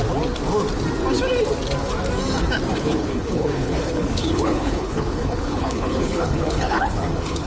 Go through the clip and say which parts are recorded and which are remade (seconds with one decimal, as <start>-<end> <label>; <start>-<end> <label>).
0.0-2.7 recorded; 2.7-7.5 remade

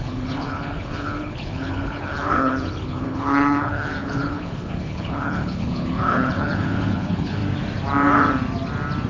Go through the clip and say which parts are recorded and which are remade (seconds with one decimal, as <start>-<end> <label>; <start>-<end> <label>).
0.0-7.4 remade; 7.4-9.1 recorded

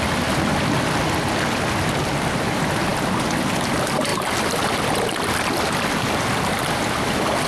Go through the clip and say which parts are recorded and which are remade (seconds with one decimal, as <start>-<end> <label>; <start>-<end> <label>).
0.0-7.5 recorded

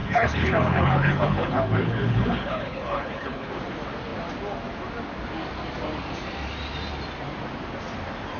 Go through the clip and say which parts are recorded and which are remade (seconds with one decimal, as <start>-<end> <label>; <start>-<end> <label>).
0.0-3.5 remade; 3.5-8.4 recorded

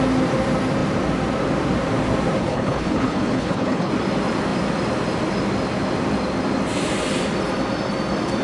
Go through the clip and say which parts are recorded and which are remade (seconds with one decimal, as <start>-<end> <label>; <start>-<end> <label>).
0.0-2.4 recorded; 2.4-3.9 remade; 3.9-8.4 recorded